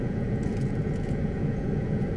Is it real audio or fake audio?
fake